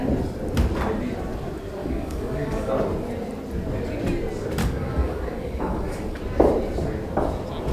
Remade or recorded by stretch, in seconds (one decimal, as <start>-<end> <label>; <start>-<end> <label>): 0.0-1.8 recorded; 1.8-2.7 remade; 2.7-4.6 recorded; 4.6-6.2 remade; 6.2-7.7 recorded